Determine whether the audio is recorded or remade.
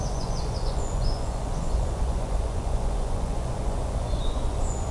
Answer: remade